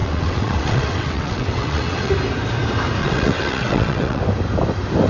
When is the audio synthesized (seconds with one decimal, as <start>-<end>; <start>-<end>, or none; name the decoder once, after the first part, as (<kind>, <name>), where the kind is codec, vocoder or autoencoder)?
0.0-2.1 (vocoder, WaveNeXt); 3.0-4.2